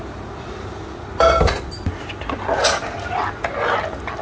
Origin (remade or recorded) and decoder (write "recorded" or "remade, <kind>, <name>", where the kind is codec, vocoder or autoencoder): recorded